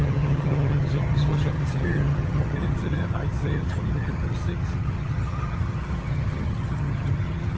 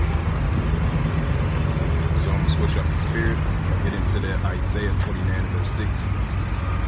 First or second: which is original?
second